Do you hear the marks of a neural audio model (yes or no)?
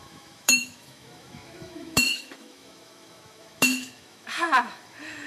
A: yes